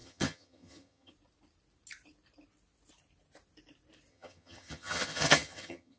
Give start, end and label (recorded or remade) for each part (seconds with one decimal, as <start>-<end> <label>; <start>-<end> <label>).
0.0-1.1 remade; 1.1-4.1 recorded; 4.1-6.0 remade